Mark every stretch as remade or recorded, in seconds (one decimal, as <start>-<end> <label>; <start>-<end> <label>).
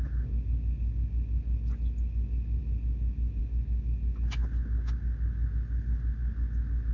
0.0-6.9 recorded